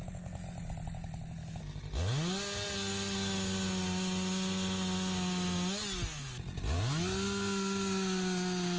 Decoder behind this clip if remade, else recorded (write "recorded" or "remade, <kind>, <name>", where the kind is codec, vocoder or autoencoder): recorded